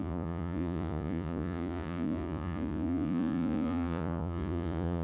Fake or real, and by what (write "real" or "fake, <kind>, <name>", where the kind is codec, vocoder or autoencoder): fake, vocoder, Vocos